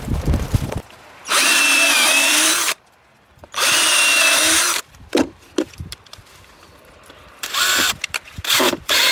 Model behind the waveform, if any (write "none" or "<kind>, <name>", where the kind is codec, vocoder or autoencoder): vocoder, BigVGAN v2